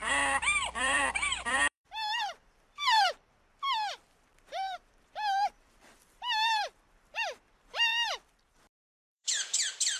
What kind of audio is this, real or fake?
fake